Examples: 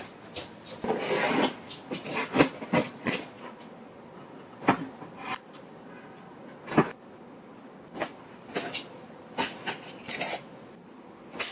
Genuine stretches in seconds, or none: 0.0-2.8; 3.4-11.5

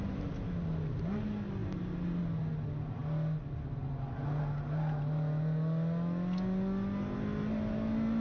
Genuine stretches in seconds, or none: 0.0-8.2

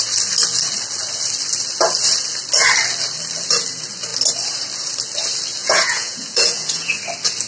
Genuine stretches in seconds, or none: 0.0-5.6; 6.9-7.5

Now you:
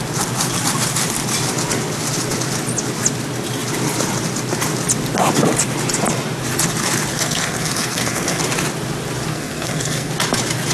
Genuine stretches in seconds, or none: 0.0-7.1; 8.4-9.3; 10.1-10.7

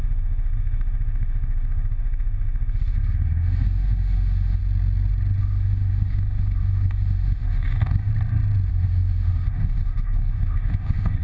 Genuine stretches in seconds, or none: 4.6-5.4; 8.1-8.7